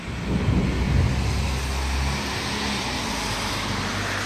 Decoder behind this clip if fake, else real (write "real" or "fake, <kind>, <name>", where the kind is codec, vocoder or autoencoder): real